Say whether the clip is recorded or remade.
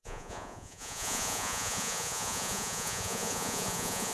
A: remade